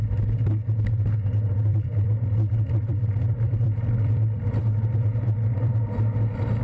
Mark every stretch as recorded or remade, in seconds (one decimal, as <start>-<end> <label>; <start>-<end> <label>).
0.0-1.7 recorded; 1.7-5.7 remade; 5.7-6.6 recorded